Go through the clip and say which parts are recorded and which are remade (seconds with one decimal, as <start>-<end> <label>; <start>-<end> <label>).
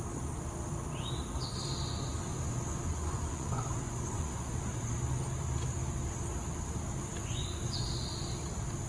0.0-2.3 recorded; 2.3-4.9 remade; 4.9-7.2 recorded; 7.2-7.8 remade; 7.8-8.9 recorded